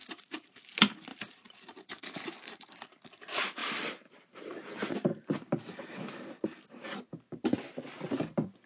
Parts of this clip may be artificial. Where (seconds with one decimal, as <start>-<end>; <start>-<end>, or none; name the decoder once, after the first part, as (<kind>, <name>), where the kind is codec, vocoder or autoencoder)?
0.0-0.6 (vocoder, BigVGAN v2); 1.1-3.0; 3.6-5.8